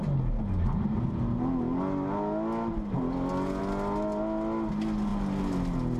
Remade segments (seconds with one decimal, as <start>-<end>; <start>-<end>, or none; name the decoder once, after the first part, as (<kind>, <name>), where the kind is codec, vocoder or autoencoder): none